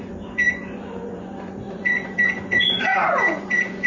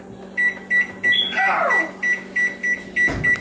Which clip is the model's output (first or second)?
first